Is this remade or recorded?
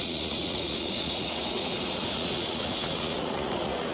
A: remade